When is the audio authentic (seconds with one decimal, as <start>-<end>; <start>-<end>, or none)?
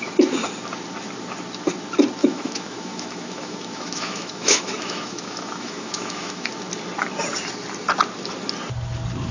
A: 0.0-2.2; 6.5-9.3